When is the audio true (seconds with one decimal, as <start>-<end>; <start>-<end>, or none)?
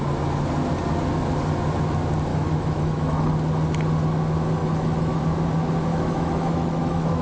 0.0-2.3; 3.3-4.6; 5.2-5.9